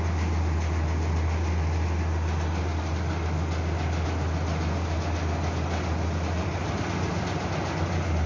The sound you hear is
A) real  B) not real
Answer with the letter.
A